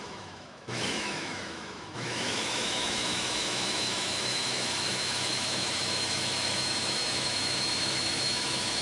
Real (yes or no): no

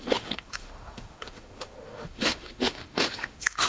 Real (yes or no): no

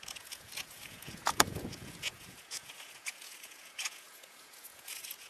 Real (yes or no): no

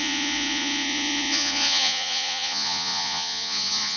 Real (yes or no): no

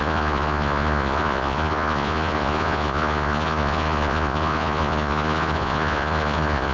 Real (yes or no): no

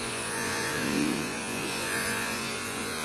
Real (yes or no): no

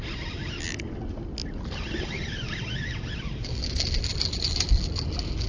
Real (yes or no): yes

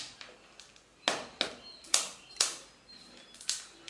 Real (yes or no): yes